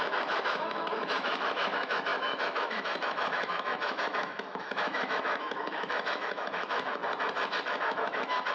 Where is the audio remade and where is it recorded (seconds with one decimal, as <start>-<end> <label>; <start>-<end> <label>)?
0.0-7.0 remade; 7.0-7.6 recorded; 7.6-8.5 remade